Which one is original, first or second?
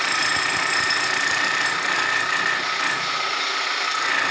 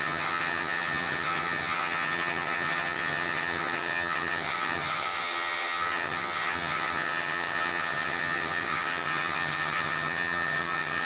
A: first